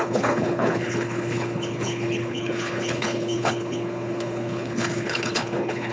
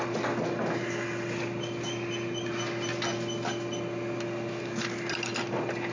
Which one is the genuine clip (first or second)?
second